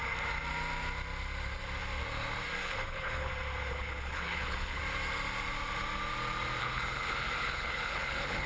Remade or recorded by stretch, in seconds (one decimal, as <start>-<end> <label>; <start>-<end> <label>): 0.0-2.6 recorded; 2.6-3.3 remade; 3.3-3.7 recorded; 3.7-4.8 remade; 4.8-6.6 recorded; 6.6-8.5 remade

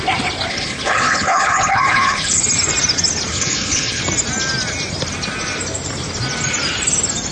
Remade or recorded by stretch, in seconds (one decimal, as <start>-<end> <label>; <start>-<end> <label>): 0.0-0.5 recorded; 0.5-2.4 remade; 2.4-3.3 recorded; 3.3-4.0 remade; 4.0-7.3 recorded

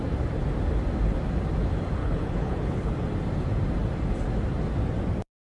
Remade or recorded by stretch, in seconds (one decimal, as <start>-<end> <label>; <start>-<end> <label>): 0.0-2.0 recorded; 2.0-2.9 remade; 2.9-5.4 recorded

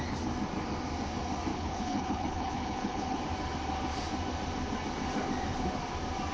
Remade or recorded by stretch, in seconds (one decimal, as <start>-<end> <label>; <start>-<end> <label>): 0.0-1.5 recorded; 1.5-3.2 remade; 3.2-6.3 recorded

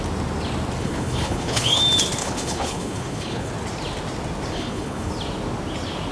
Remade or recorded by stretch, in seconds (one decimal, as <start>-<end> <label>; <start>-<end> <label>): 0.0-0.8 recorded; 0.8-1.8 remade; 1.8-2.2 recorded; 2.2-3.5 remade; 3.5-4.5 recorded; 4.5-5.1 remade; 5.1-6.1 recorded

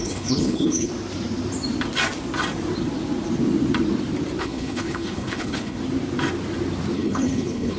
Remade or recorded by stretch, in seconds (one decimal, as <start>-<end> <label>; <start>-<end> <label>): 0.0-0.9 remade; 0.9-4.4 recorded; 4.4-5.8 remade; 5.8-6.9 recorded; 6.9-7.8 remade